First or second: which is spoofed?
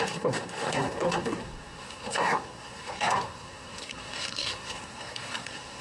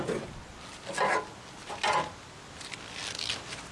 first